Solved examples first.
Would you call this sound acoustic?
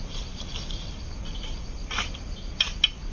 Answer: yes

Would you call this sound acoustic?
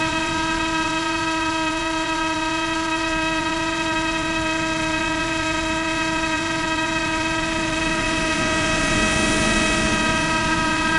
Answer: no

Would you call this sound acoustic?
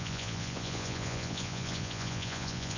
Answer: no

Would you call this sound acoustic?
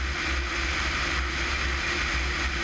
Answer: yes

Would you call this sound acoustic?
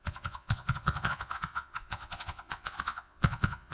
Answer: no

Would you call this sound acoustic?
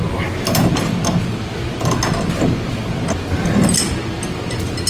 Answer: yes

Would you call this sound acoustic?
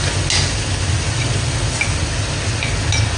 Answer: yes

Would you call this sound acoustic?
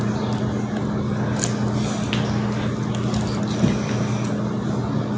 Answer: yes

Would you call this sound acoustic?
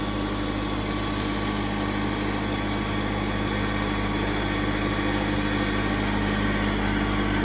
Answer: yes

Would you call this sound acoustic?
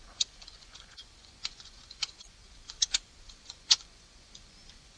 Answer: no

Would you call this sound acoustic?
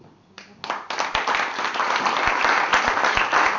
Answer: yes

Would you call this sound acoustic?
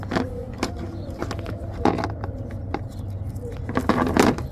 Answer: yes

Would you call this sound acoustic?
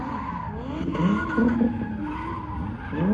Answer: yes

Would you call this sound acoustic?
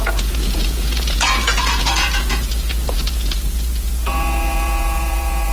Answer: no